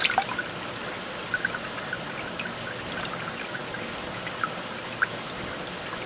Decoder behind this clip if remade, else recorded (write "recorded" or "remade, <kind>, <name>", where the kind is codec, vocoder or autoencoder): recorded